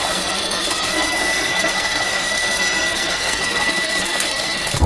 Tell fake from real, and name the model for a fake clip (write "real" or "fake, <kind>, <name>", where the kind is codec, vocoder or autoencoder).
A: fake, codec, SNAC